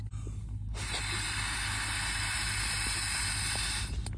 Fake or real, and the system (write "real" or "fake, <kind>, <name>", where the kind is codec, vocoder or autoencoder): real